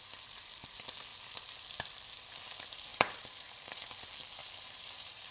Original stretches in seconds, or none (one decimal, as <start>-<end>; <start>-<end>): 0.0-2.9; 3.8-4.4